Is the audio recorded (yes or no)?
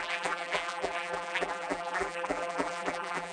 no